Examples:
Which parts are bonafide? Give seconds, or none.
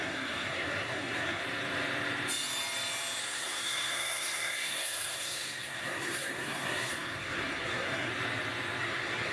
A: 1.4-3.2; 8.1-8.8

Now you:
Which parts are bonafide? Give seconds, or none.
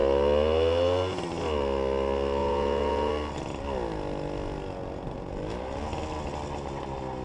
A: 0.0-2.4; 3.1-7.2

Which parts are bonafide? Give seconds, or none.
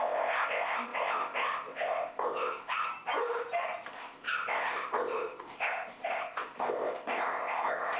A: 2.9-3.9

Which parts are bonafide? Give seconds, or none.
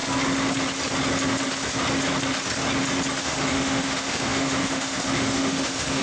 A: 0.0-3.2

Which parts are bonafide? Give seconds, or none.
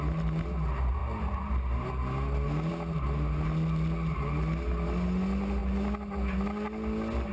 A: 0.0-7.3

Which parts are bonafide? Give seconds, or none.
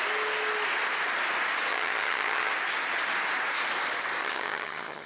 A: 0.0-1.7; 2.5-4.2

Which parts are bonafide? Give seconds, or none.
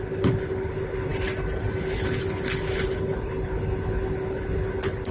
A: 1.1-1.8